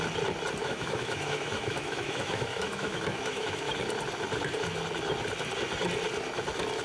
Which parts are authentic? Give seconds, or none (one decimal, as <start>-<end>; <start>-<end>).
0.0-0.6; 3.7-6.8

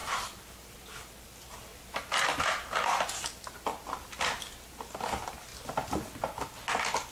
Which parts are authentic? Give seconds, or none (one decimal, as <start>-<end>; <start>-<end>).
1.1-7.1

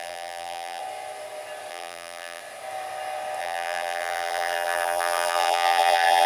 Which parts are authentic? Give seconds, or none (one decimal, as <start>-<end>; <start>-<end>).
0.8-1.7; 2.4-3.4

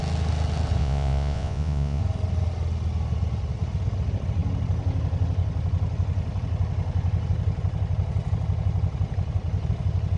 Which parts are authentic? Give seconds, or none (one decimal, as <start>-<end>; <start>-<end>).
0.0-0.8; 2.0-10.2